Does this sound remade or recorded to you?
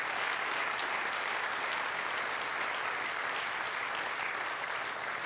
recorded